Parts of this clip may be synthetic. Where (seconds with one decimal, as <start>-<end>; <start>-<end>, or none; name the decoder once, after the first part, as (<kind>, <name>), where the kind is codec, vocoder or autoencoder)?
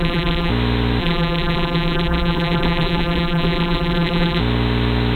0.0-0.5 (vocoder, BigVGAN v2); 1.0-4.4